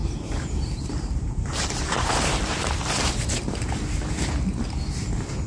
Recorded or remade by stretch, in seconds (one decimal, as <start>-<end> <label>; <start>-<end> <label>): 0.0-3.1 remade; 3.1-5.5 recorded